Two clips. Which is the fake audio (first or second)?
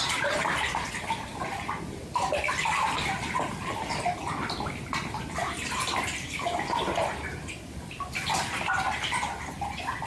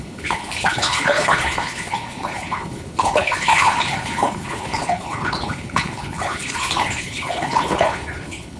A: second